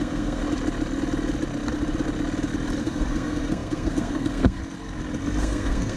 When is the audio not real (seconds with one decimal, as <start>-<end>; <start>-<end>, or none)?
0.0-0.4; 2.8-4.6; 5.4-6.0